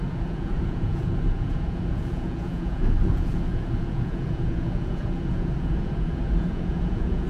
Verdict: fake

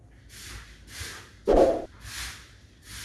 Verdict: real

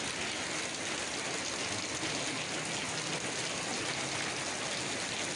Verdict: real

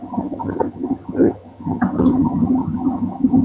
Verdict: fake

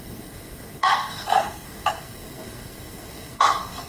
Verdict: fake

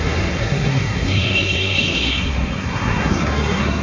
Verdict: fake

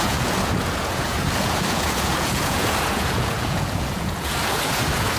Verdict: fake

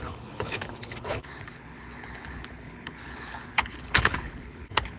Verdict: fake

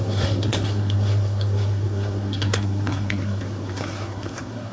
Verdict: fake